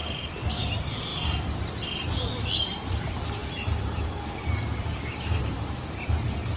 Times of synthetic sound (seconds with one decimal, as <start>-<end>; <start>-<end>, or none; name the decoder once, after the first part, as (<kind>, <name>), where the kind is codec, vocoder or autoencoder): 0.7-1.1 (vocoder, BigVGAN v2); 2.9-6.6